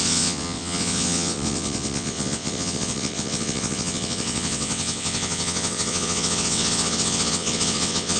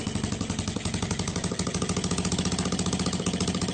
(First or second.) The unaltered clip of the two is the second